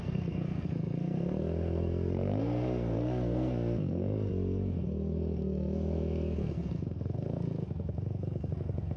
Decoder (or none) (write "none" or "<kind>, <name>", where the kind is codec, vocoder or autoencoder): codec, SNAC